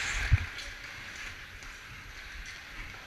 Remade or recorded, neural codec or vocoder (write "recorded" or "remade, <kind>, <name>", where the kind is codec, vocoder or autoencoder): recorded